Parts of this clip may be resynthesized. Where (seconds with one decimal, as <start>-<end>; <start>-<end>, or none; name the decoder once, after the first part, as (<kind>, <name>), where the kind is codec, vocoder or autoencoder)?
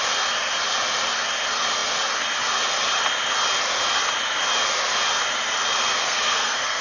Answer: 6.0-6.8 (codec, SNAC)